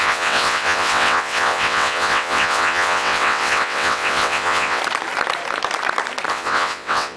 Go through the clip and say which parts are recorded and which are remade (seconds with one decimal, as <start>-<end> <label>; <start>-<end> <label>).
0.0-4.8 remade; 4.8-6.3 recorded; 6.3-7.2 remade